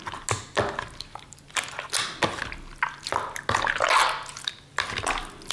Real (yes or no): yes